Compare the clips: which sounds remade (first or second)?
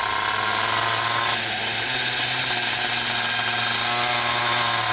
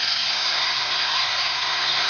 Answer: second